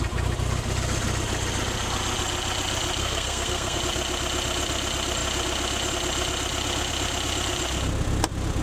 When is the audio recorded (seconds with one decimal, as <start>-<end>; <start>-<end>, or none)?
0.0-3.0; 3.8-8.6